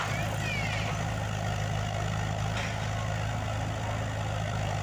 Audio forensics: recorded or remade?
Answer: recorded